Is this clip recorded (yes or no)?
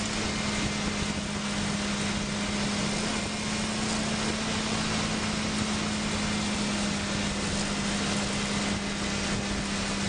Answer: yes